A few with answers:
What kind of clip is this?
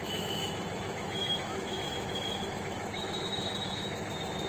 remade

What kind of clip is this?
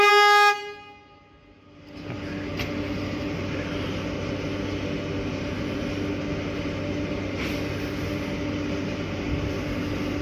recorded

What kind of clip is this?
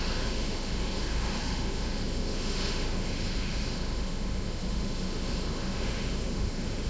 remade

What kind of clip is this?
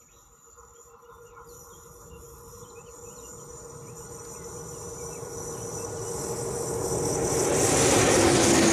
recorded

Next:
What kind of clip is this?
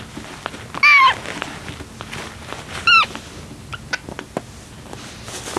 recorded